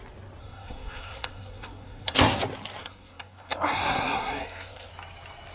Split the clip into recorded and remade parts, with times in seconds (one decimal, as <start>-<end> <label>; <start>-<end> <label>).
0.0-0.4 recorded; 0.4-2.4 remade; 2.4-2.8 recorded; 2.8-4.9 remade; 4.9-5.5 recorded